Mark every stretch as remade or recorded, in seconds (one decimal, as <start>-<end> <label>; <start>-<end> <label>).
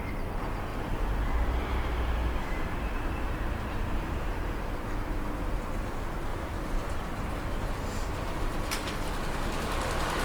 0.0-2.4 recorded; 2.4-4.4 remade; 4.4-6.3 recorded; 6.3-7.3 remade; 7.3-10.2 recorded